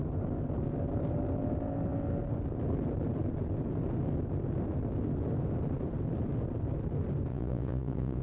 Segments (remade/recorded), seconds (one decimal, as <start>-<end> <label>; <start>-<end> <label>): 0.0-7.3 recorded; 7.3-8.2 remade